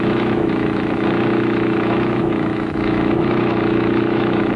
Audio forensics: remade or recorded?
remade